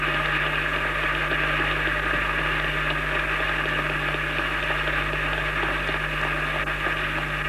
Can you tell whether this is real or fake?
real